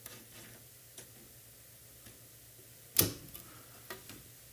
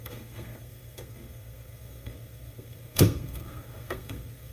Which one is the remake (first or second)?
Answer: second